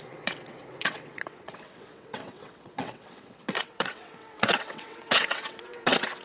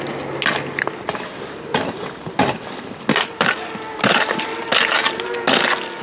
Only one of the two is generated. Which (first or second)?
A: first